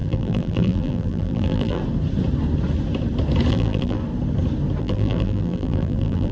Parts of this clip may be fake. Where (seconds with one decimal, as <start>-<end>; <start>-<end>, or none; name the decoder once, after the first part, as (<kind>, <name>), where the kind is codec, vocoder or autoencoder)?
0.0-1.8 (vocoder, BigVGAN v2); 3.5-4.0; 4.8-6.3

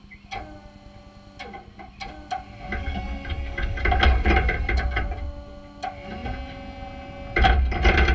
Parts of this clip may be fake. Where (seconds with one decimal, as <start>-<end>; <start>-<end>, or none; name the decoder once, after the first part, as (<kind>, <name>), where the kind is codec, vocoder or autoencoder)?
2.8-3.8 (codec, DAC)